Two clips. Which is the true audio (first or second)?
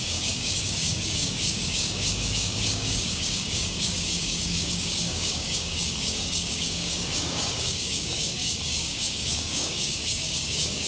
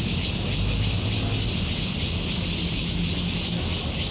second